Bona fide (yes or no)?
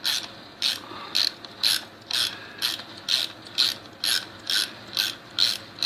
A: yes